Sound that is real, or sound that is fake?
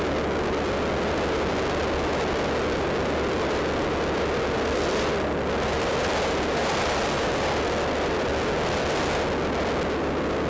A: real